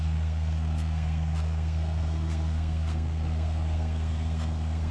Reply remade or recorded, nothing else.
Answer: remade